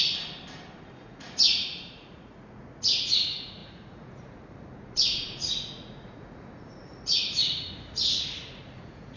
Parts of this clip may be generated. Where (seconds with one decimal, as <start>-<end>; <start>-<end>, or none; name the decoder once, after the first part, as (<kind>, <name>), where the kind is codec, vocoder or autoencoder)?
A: 1.0-9.2 (vocoder, Vocos)